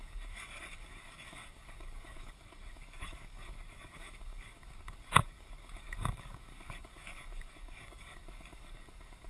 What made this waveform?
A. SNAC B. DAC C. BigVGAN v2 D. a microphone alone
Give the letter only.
B